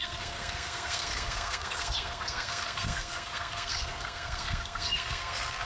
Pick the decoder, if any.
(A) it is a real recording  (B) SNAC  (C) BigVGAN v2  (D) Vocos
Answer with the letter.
B